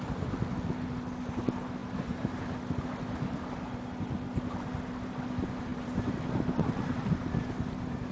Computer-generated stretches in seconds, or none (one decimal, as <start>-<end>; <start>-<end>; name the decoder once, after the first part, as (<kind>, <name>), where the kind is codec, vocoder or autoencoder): 1.8-2.4 (vocoder, BigVGAN v2)